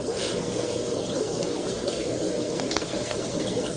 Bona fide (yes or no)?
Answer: no